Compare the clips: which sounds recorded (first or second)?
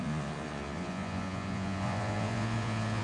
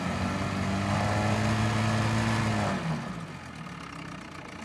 second